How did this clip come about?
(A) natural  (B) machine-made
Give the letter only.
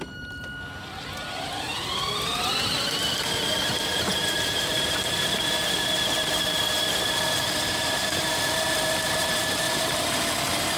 A